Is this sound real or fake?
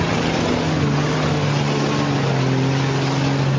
real